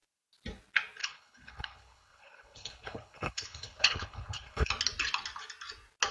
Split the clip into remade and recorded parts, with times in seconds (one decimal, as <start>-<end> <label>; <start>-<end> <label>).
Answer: 0.0-1.0 recorded; 1.0-4.7 remade; 4.7-6.1 recorded